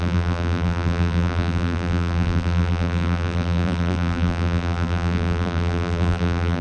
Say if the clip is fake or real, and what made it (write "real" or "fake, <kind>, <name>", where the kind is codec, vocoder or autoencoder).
fake, vocoder, BigVGAN v2